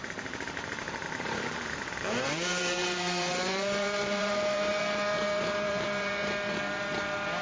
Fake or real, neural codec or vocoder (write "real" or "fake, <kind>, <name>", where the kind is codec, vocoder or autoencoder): fake, vocoder, BigVGAN v2